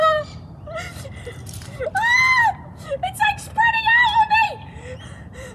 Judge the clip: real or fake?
fake